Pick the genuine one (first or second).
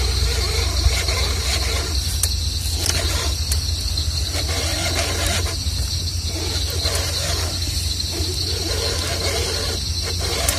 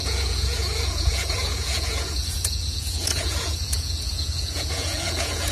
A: first